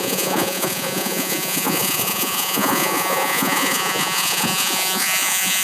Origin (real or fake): fake